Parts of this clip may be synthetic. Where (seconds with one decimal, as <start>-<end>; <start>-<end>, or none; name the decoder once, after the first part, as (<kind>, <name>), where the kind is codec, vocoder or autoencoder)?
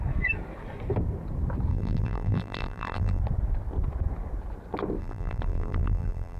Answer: 1.7-3.2 (vocoder, BigVGAN v2); 5.0-6.4